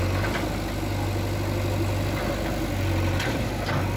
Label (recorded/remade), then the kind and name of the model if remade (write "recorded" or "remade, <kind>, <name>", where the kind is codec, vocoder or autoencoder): recorded